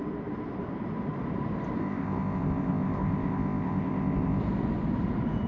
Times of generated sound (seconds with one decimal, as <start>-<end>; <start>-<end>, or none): 1.8-4.4